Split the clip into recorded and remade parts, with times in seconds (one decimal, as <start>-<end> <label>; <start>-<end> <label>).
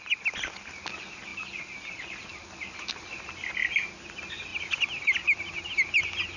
0.0-6.4 recorded